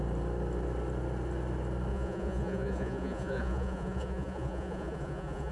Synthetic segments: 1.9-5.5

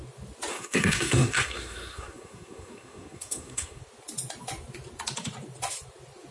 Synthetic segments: 0.5-3.8

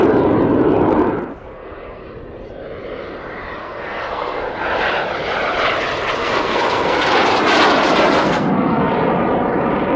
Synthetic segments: 1.3-2.0; 3.6-4.4; 6.2-7.1; 8.2-8.9

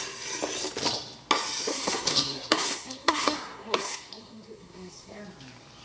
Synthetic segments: 1.7-5.2

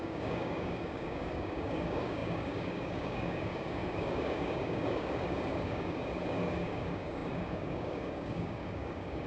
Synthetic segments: 0.0-9.3